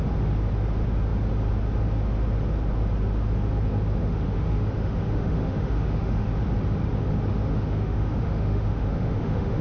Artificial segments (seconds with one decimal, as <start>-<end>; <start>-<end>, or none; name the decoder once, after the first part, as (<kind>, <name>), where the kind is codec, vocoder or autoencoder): 4.0-6.3 (autoencoder, DAC-VAE); 7.3-9.6

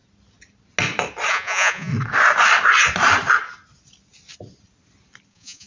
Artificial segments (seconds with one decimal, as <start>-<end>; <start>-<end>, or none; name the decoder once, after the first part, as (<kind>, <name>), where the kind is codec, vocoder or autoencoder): 1.3-1.9 (vocoder, Vocos); 5.3-5.7